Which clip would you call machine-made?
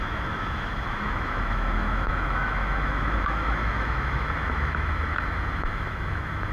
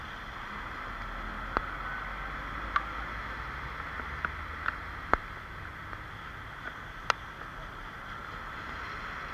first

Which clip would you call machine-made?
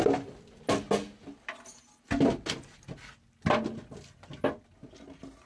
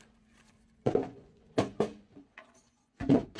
second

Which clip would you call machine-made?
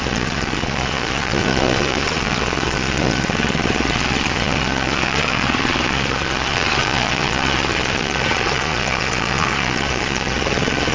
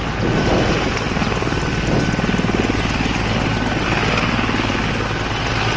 first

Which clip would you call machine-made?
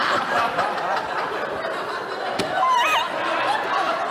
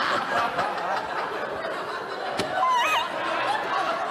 first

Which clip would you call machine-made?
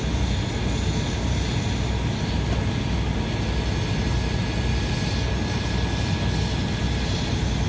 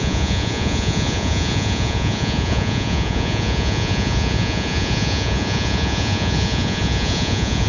second